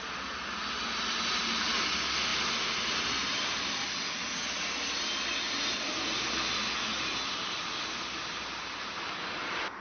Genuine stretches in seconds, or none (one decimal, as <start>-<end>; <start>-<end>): 0.0-9.8